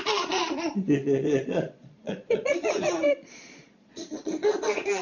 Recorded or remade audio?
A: remade